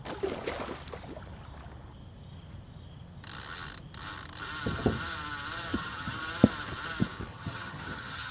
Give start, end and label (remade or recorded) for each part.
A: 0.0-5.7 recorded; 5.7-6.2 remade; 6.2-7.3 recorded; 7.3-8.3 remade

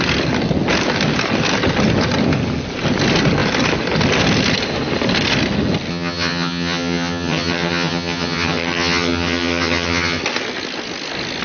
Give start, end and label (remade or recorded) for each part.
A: 0.0-5.9 recorded; 5.9-10.2 remade; 10.2-11.4 recorded

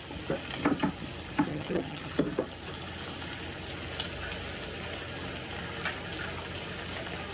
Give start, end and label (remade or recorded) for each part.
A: 0.0-1.5 recorded; 1.5-2.1 remade; 2.1-7.3 recorded

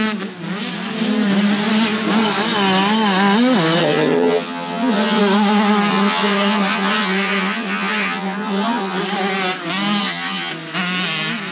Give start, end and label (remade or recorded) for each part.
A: 0.0-3.8 recorded; 3.8-5.2 remade; 5.2-5.9 recorded; 5.9-9.0 remade; 9.0-10.0 recorded; 10.0-10.5 remade; 10.5-11.5 recorded

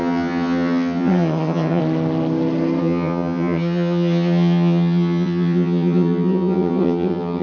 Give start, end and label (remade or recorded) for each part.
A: 0.0-1.8 remade; 1.8-2.8 recorded; 2.8-7.4 remade

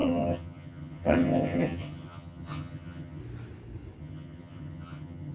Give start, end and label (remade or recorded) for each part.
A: 0.0-3.2 remade; 3.2-4.0 recorded; 4.0-5.3 remade